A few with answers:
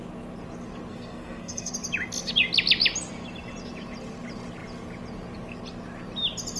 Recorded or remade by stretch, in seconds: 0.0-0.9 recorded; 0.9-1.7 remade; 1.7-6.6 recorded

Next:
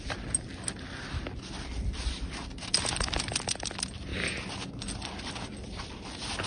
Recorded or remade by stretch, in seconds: 0.0-6.5 recorded

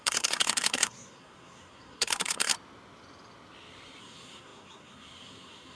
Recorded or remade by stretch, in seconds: 0.0-2.5 remade; 2.5-4.0 recorded; 4.0-5.8 remade

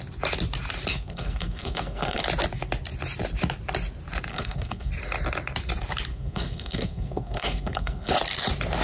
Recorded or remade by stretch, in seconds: 0.0-0.9 recorded; 0.9-2.2 remade; 2.2-4.3 recorded; 4.3-4.9 remade; 4.9-6.1 recorded; 6.1-8.1 remade; 8.1-8.8 recorded

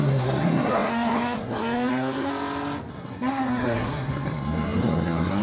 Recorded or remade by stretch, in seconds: 0.0-2.3 remade; 2.3-2.9 recorded; 2.9-5.4 remade